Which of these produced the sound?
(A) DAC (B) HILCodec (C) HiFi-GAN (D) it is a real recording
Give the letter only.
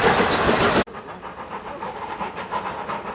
D